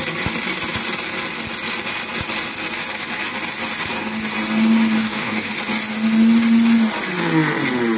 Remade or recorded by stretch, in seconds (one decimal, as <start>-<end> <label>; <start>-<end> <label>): 0.0-5.0 recorded; 5.0-5.5 remade; 5.5-8.0 recorded